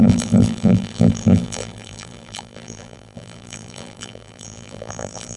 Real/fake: fake